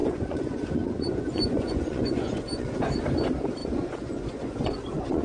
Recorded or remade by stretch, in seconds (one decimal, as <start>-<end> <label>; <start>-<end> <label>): 0.0-2.8 remade; 2.8-3.6 recorded; 3.6-5.2 remade